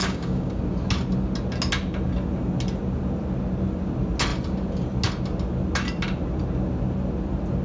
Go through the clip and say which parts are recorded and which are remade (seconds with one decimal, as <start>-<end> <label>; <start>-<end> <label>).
0.0-0.6 remade; 0.6-7.6 recorded